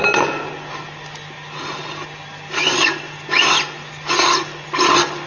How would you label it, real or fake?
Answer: real